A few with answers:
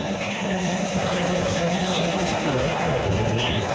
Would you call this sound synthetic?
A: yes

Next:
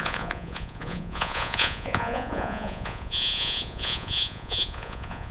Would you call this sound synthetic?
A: yes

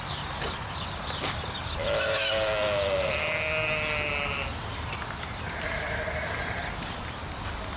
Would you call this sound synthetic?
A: no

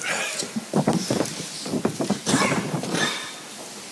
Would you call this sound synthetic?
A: no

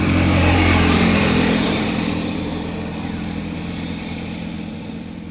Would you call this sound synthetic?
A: yes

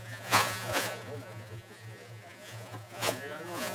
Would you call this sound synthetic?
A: yes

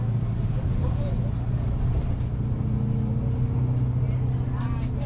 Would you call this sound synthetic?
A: no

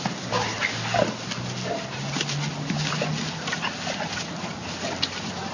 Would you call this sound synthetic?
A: no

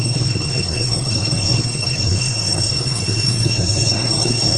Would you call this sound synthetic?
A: yes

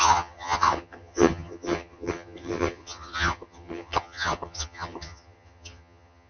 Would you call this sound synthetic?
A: yes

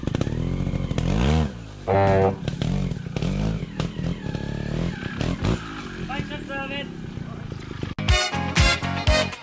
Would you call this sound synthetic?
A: no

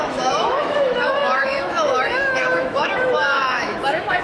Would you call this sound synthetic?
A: yes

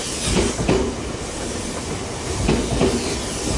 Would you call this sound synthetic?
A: no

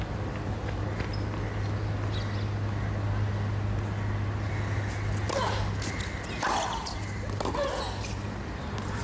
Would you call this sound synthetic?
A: no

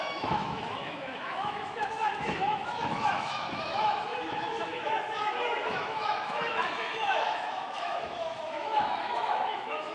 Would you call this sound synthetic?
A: yes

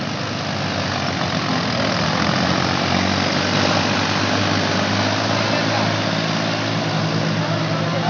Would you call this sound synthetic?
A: no